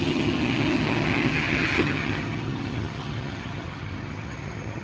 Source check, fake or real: fake